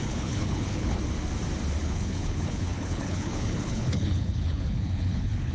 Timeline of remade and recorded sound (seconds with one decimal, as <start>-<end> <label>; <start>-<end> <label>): 0.0-1.0 remade; 1.0-1.8 recorded; 1.8-5.5 remade